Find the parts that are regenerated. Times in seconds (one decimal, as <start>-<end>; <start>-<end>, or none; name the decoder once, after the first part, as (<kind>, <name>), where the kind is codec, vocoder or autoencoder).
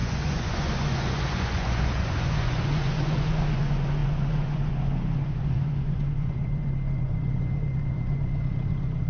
0.0-9.1 (vocoder, Vocos)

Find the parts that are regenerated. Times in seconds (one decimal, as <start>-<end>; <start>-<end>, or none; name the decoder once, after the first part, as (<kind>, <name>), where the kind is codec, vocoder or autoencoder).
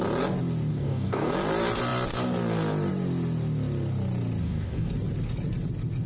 0.7-1.3 (codec, DAC); 4.4-4.9